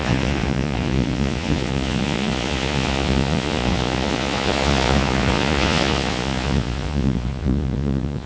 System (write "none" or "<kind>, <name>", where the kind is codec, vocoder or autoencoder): vocoder, Vocos